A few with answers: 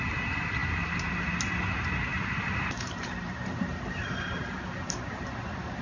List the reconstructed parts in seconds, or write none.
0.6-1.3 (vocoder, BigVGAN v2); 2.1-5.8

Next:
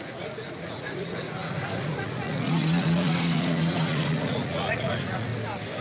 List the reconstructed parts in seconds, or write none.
0.0-5.3 (vocoder, Vocos)

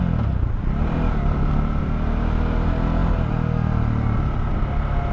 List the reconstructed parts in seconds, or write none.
none